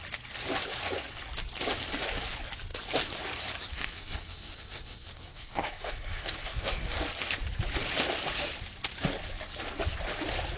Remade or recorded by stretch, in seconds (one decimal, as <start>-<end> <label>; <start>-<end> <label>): 0.0-3.7 recorded; 3.7-7.0 remade; 7.0-10.6 recorded